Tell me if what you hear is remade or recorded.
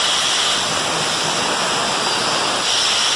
recorded